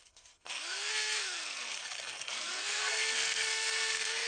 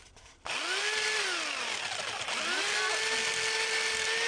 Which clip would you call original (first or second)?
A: second